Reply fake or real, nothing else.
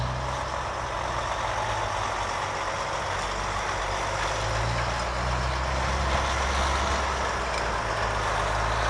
real